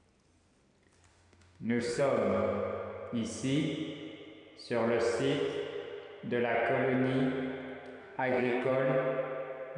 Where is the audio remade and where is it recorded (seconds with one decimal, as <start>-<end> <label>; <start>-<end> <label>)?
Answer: 0.0-1.1 recorded; 1.1-2.0 remade; 2.0-8.0 recorded; 8.0-8.7 remade; 8.7-9.8 recorded

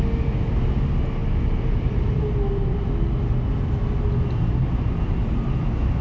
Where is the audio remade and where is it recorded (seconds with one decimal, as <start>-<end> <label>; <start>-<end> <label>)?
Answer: 0.0-1.2 recorded; 1.2-1.9 remade; 1.9-6.0 recorded

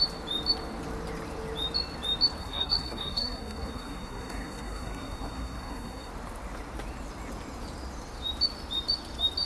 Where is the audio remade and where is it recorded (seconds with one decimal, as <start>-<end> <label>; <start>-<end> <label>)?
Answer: 0.0-2.4 recorded; 2.4-6.1 remade; 6.1-9.5 recorded